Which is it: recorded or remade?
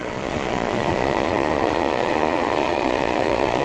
remade